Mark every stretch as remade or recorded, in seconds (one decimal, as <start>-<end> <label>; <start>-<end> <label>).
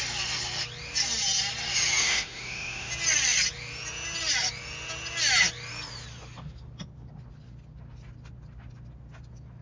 0.0-2.0 recorded; 2.0-2.9 remade; 2.9-9.6 recorded